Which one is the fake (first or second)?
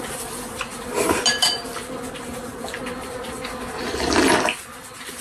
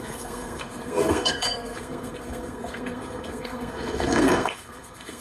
second